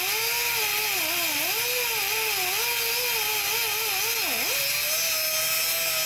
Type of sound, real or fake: real